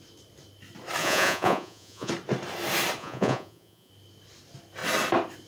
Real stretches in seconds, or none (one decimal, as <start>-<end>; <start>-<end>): 0.0-1.0; 2.1-3.0; 3.9-5.5